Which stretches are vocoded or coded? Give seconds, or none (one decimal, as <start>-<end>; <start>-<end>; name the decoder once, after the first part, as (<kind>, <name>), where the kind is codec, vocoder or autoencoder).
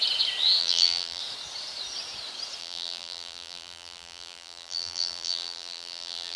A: 0.6-1.2 (vocoder, BigVGAN v2); 2.6-6.4